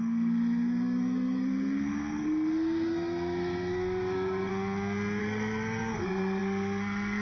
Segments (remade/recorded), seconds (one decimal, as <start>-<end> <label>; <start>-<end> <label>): 0.0-4.5 remade; 4.5-5.2 recorded; 5.2-7.2 remade